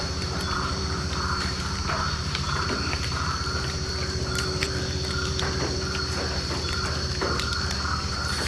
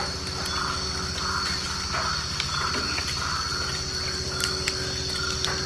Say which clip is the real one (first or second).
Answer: second